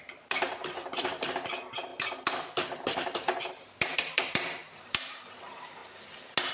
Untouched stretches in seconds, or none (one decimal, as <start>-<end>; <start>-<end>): 5.8-6.5